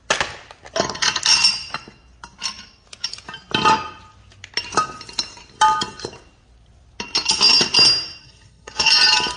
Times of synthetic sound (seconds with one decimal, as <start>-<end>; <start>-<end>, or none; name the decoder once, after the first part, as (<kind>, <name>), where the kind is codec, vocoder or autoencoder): 8.2-8.9 (codec, SNAC)